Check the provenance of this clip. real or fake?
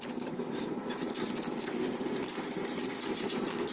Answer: fake